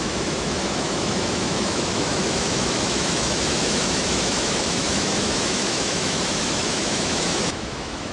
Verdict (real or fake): fake